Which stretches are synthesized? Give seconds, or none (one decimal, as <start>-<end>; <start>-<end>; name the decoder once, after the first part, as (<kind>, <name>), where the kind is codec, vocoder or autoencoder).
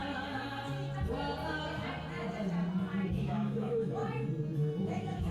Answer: 3.2-4.0 (autoencoder, DAC-VAE); 4.8-5.3